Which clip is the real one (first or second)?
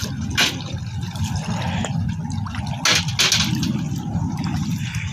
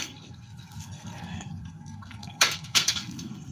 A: first